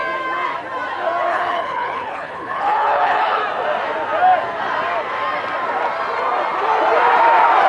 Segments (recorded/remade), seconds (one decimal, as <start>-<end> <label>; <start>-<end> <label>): 0.0-1.3 recorded; 1.3-3.4 remade; 3.4-7.7 recorded